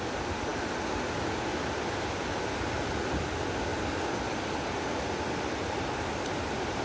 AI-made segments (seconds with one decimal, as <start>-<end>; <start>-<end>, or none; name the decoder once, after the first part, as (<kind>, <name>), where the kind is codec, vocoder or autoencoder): none